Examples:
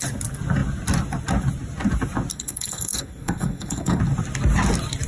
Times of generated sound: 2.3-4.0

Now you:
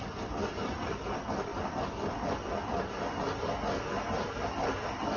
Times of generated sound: none

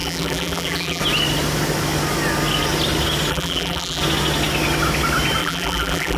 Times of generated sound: 0.0-1.0; 3.3-4.0; 5.4-6.2

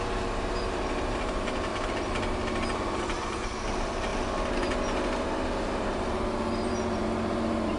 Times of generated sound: 0.0-1.7; 3.0-4.1; 5.2-7.8

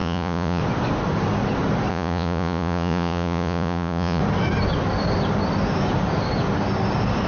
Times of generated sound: 0.0-0.6; 1.9-4.2

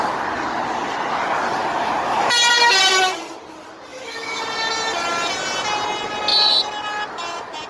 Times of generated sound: 3.9-4.4

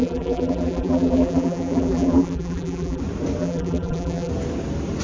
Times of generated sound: 0.0-3.0; 3.4-4.3